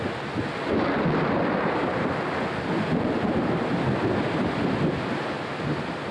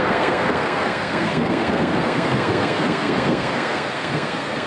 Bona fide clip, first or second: first